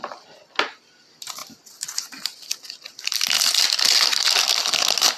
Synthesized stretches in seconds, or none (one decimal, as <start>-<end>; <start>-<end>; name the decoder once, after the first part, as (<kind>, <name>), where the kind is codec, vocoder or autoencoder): none